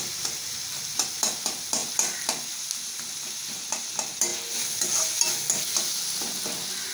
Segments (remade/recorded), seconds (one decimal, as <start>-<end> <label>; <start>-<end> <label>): 0.0-4.3 remade; 4.3-5.9 recorded; 5.9-6.9 remade